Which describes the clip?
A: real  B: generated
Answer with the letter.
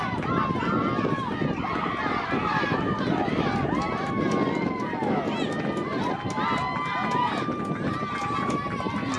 A